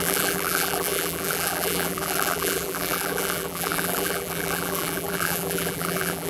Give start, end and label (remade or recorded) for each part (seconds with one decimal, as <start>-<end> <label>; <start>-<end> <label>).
0.0-6.3 remade

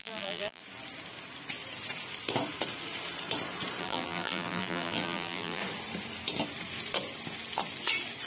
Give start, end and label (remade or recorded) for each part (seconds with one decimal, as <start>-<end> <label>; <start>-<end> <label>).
0.0-0.6 remade; 0.6-3.8 recorded; 3.8-5.6 remade; 5.6-8.3 recorded

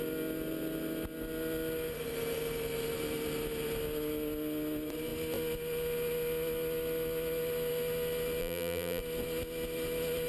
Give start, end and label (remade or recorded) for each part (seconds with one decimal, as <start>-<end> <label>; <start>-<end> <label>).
0.0-8.4 recorded; 8.4-9.0 remade; 9.0-10.3 recorded

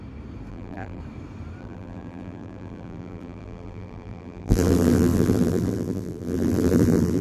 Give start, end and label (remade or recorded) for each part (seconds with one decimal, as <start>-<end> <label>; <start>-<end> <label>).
0.0-0.5 recorded; 0.5-1.0 remade; 1.0-1.6 recorded; 1.6-7.2 remade

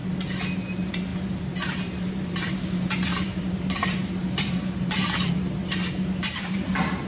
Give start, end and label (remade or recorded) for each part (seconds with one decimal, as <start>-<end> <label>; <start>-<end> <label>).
0.0-0.7 recorded; 0.7-7.1 remade